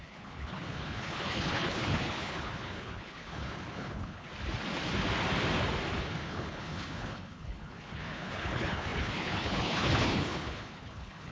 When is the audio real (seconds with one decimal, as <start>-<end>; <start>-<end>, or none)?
4.3-6.0